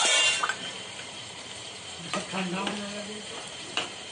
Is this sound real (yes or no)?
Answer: no